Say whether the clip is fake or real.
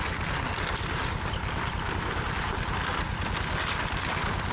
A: real